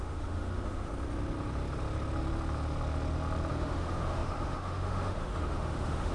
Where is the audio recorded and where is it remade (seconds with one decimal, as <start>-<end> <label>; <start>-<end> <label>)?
0.0-0.9 remade; 0.9-3.5 recorded; 3.5-6.1 remade